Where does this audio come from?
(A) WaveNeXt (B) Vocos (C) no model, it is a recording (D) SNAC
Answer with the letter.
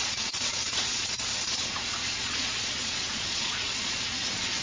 B